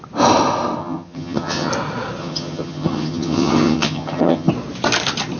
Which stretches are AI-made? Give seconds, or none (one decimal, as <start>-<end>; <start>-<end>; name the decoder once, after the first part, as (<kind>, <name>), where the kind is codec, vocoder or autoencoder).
0.8-1.7 (vocoder, HiFi-GAN); 2.2-4.5